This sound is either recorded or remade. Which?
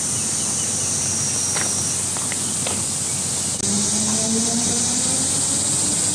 recorded